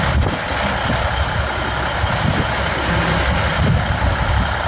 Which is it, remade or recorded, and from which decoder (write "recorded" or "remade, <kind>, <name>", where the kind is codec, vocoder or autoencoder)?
recorded